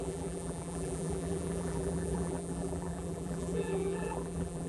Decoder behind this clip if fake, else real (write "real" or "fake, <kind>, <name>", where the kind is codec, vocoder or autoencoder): fake, vocoder, BigVGAN v2